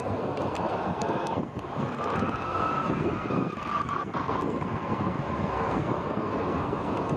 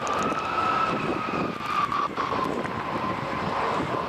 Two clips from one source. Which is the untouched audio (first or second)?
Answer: second